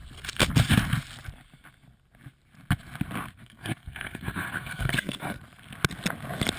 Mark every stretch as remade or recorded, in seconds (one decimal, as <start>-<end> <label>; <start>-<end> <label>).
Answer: 0.0-3.4 recorded; 3.4-5.4 remade; 5.4-6.6 recorded